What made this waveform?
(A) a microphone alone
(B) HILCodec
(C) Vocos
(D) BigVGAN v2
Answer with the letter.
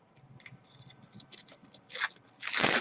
A